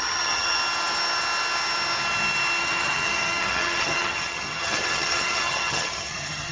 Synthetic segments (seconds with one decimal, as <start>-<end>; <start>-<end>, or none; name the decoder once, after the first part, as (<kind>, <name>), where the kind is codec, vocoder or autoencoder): 0.0-0.6 (vocoder, HiFi-GAN); 2.6-6.5